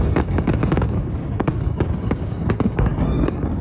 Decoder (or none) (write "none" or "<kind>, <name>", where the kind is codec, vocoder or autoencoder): codec, DAC